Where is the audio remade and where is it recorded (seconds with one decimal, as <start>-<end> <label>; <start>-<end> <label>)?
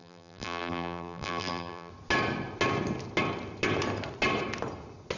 0.0-1.9 remade; 1.9-5.2 recorded